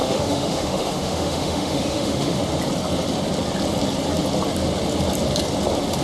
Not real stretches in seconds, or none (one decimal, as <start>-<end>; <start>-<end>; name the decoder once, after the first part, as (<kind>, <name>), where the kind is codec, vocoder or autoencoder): 0.0-2.4 (autoencoder, DAC-VAE)

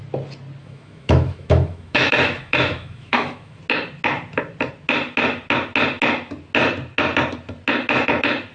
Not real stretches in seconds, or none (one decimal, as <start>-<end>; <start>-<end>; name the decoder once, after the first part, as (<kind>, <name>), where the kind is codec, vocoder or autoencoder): 0.6-3.6 (autoencoder, DAC-VAE)

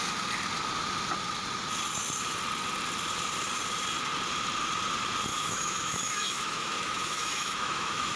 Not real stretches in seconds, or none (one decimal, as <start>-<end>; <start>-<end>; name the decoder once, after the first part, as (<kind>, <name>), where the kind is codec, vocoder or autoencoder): 5.3-8.2 (autoencoder, DAC-VAE)

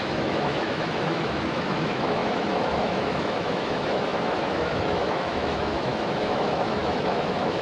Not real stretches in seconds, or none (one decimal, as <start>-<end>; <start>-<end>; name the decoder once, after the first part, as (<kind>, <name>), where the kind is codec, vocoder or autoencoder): 0.0-7.6 (autoencoder, DAC-VAE)

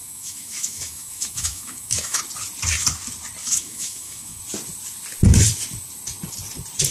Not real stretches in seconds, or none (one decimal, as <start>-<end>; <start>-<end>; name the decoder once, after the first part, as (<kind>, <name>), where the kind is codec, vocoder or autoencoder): 0.0-2.2 (autoencoder, DAC-VAE); 3.4-4.4

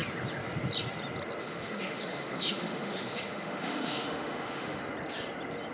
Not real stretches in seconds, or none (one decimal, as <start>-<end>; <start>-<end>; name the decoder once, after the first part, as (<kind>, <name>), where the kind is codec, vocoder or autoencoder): 1.4-4.8 (autoencoder, DAC-VAE)

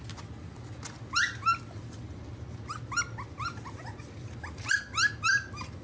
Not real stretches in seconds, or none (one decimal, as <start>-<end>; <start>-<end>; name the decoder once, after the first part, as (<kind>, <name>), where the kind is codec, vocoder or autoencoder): none